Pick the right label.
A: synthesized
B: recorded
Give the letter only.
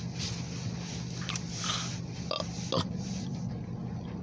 B